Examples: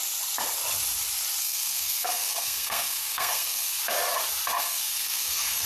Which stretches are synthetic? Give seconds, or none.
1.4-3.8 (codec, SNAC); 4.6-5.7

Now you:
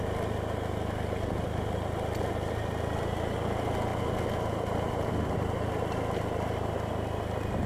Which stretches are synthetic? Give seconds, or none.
none

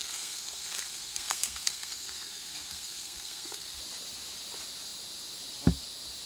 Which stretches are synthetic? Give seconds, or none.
0.0-3.8 (codec, SNAC)